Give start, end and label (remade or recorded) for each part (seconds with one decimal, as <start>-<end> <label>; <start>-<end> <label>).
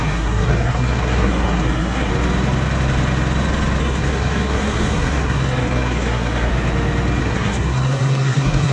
0.0-2.1 remade; 2.1-3.8 recorded; 3.8-6.5 remade; 6.5-7.2 recorded; 7.2-8.7 remade